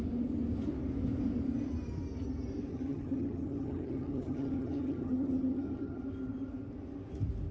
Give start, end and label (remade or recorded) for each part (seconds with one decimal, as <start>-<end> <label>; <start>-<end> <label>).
0.0-2.7 recorded; 2.7-6.0 remade; 6.0-7.5 recorded